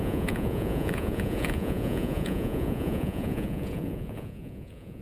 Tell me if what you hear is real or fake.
fake